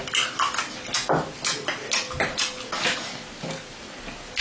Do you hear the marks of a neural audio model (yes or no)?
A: no